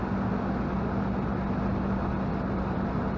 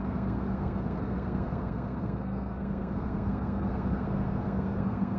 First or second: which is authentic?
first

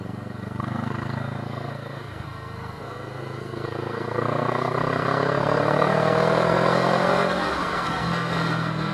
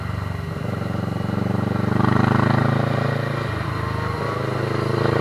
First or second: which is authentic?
second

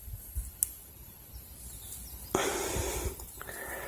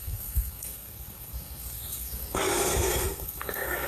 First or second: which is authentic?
first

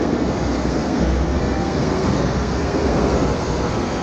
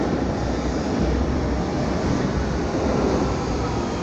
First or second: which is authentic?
second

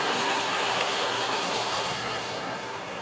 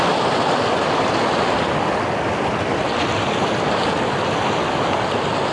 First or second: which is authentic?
second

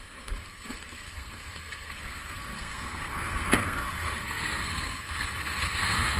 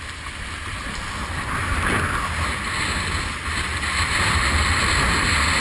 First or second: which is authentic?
second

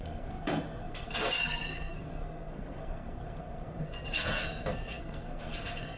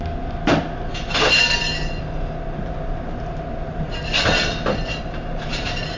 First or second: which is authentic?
second